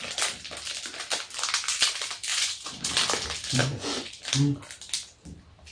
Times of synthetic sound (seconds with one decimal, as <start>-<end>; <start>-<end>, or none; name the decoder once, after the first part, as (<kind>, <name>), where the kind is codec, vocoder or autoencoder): 2.3-2.9 (vocoder, Vocos); 3.6-4.1